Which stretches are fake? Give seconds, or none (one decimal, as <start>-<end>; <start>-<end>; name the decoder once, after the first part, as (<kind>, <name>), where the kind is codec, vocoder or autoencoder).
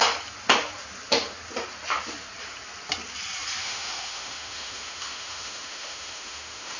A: 3.6-6.8 (autoencoder, DAC-VAE)